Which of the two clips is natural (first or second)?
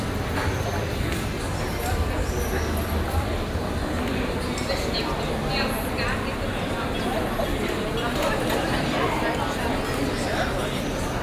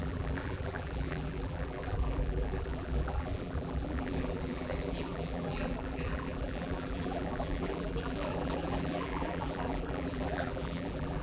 first